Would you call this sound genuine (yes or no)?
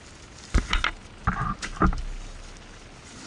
yes